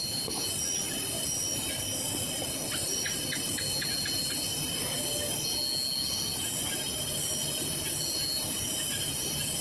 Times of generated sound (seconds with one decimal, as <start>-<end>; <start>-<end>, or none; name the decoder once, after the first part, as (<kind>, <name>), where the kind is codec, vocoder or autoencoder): none